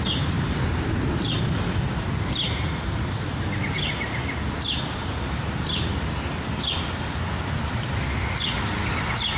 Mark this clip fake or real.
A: real